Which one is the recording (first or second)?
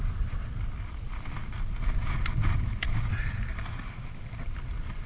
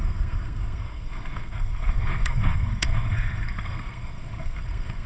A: first